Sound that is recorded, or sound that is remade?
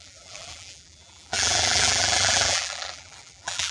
remade